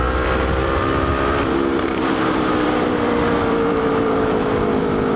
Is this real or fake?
fake